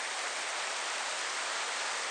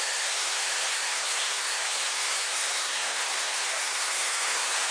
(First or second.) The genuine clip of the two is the first